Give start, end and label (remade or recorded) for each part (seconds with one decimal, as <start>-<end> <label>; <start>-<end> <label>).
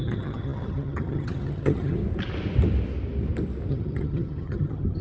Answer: 0.0-2.0 remade; 2.0-3.7 recorded; 3.7-5.0 remade